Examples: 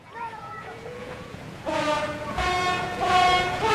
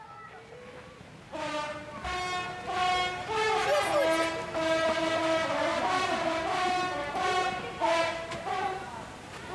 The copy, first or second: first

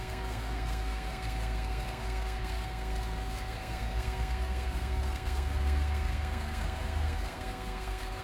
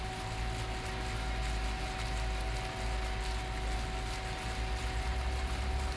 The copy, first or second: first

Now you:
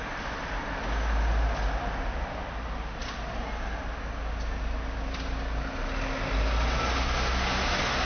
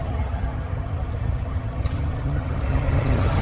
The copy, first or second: second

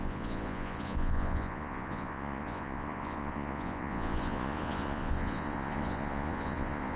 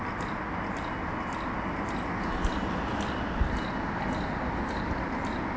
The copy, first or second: first